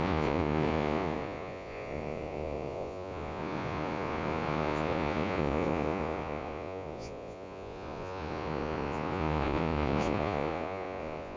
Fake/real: fake